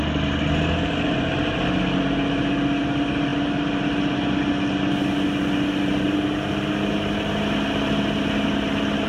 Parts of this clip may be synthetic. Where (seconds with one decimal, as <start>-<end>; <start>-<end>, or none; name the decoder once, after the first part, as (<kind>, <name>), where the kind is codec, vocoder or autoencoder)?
none